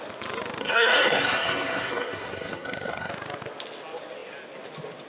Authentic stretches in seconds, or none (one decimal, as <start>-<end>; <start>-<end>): 0.0-0.6; 3.1-5.1